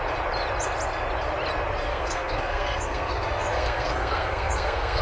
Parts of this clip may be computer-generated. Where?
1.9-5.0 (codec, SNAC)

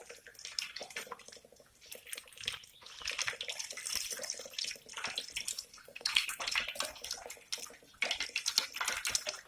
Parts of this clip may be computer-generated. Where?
5.7-6.4 (codec, SNAC)

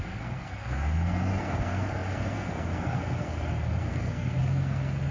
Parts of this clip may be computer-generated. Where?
0.0-5.1 (codec, SNAC)

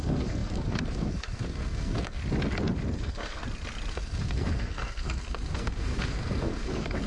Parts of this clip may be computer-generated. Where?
0.0-2.2 (codec, SNAC); 3.0-3.4; 3.9-7.1

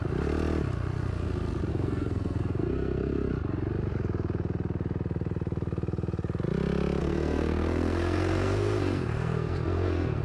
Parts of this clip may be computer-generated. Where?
1.7-3.3 (codec, SNAC); 7.0-10.2